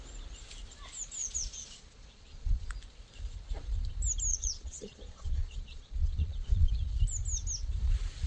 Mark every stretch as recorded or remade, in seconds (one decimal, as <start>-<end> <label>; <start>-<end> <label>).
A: 0.0-1.2 recorded; 1.2-2.7 remade; 2.7-4.3 recorded; 4.3-6.7 remade; 6.7-8.3 recorded